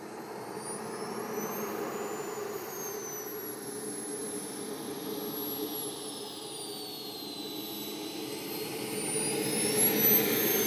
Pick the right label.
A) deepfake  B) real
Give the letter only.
B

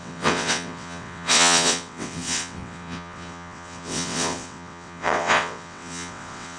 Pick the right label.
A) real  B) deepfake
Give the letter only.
B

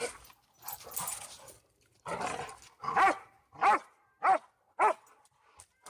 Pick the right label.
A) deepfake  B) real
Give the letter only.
B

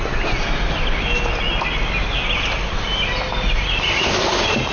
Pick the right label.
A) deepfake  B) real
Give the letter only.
B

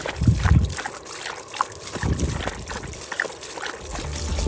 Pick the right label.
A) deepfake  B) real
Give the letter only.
B